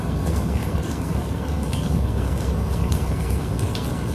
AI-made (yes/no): yes